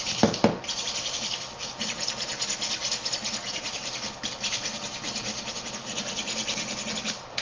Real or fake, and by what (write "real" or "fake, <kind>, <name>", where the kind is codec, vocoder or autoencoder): real